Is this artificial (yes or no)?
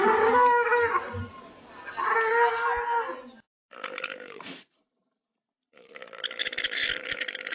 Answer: no